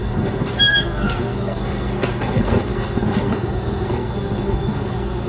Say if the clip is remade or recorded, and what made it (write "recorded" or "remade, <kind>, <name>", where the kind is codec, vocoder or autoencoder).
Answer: remade, codec, SNAC